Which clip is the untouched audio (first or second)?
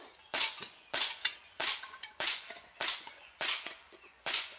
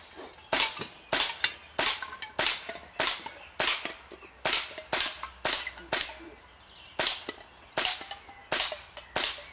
second